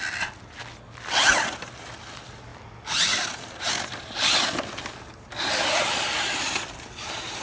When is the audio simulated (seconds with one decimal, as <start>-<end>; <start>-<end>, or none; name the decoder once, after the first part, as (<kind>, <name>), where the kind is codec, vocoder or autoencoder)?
none